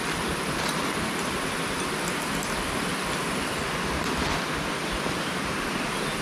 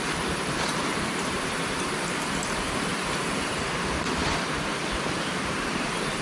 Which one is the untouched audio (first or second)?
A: first